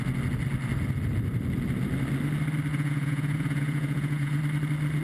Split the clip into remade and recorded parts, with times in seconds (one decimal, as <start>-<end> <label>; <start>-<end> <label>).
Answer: 0.0-2.7 recorded; 2.7-4.4 remade; 4.4-5.0 recorded